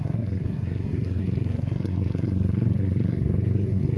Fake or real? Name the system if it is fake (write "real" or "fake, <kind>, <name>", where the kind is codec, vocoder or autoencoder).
fake, codec, SNAC